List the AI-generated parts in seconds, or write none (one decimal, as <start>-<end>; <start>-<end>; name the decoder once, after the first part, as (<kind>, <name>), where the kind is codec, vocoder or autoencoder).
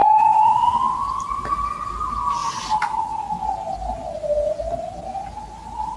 none